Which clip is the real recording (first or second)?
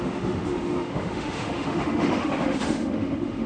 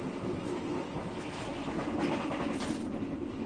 second